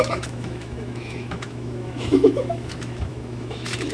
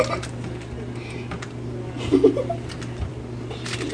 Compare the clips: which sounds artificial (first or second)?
first